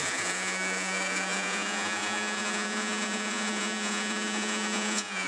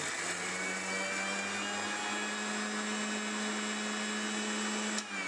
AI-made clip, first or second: first